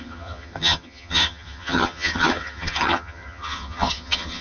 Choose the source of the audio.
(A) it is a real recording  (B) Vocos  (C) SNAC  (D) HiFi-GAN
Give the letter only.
D